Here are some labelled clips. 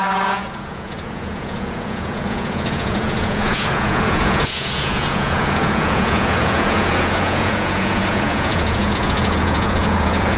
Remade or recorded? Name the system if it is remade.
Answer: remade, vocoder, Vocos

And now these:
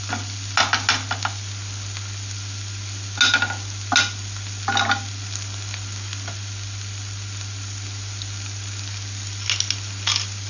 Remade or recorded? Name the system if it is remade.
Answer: recorded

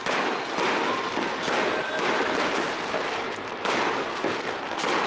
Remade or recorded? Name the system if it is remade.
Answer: remade, vocoder, BigVGAN v2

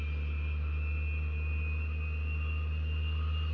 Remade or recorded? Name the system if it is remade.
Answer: recorded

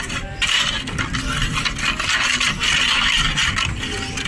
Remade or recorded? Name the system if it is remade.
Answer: recorded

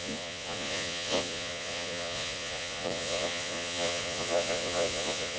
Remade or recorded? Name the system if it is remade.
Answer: remade, vocoder, Vocos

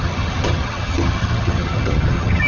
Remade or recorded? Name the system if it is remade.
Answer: remade, vocoder, HiFi-GAN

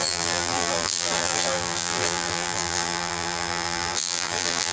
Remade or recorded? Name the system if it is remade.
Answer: remade, vocoder, BigVGAN v2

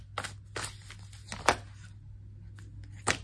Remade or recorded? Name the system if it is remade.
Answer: recorded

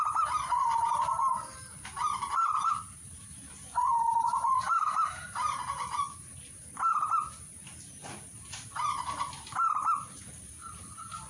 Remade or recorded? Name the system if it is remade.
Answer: remade, vocoder, BigVGAN v2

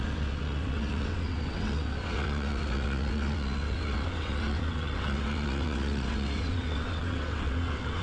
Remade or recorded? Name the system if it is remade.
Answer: remade, vocoder, WaveNeXt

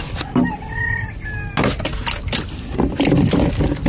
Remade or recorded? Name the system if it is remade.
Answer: recorded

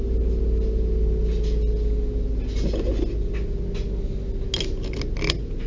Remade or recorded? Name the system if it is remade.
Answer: recorded